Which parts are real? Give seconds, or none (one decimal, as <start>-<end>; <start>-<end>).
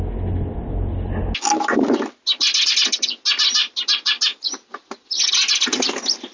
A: 0.0-6.3